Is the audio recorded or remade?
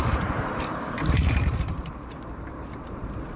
remade